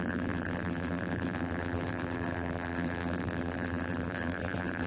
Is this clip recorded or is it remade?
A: remade